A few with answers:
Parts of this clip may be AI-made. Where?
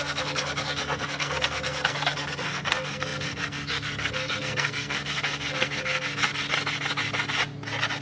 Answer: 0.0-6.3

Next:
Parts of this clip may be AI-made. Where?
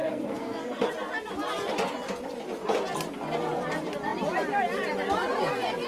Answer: 0.0-0.9